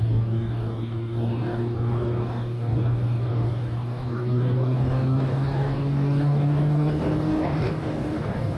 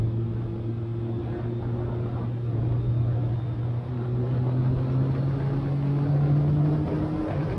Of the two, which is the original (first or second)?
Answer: second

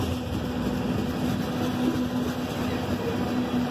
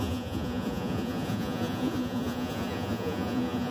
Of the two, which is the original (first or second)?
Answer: first